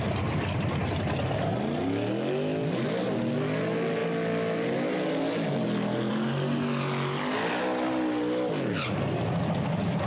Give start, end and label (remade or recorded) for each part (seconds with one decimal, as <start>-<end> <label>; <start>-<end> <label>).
0.0-10.1 recorded